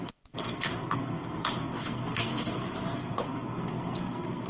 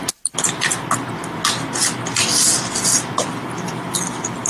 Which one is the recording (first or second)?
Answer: second